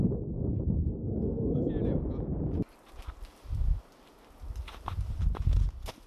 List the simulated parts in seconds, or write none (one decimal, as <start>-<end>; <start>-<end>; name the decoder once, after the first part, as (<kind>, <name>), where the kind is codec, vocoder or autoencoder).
1.0-1.7 (codec, SNAC)